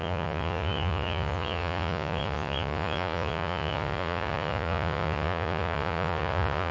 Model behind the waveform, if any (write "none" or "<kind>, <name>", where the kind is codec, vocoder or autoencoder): vocoder, Vocos